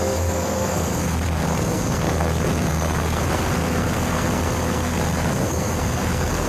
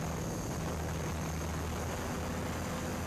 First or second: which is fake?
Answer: first